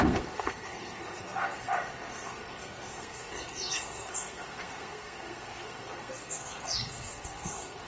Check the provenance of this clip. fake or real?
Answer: fake